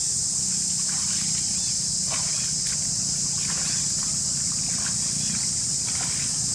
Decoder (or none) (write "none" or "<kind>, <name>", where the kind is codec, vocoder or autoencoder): none